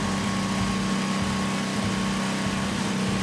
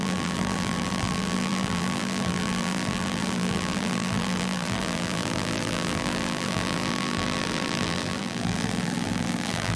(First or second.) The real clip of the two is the first